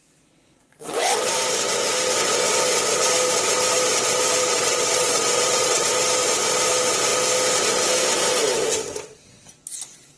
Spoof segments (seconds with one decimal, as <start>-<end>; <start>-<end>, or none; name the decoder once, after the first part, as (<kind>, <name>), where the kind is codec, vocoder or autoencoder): 0.7-1.2 (vocoder, WaveNeXt); 4.5-5.9